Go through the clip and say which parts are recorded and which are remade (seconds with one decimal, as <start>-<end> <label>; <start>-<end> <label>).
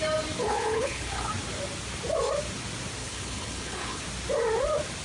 0.0-0.4 recorded; 0.4-1.3 remade; 1.3-3.0 recorded; 3.0-4.0 remade; 4.0-5.0 recorded